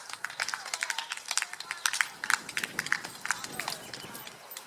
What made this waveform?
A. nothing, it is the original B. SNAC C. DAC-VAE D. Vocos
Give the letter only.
A